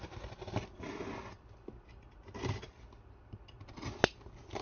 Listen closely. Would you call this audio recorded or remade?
recorded